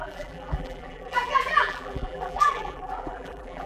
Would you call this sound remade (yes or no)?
yes